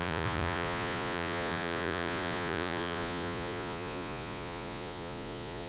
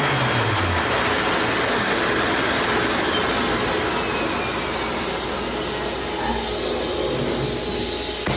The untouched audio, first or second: second